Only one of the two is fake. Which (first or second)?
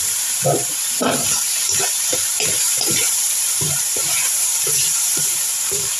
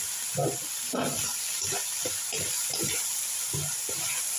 first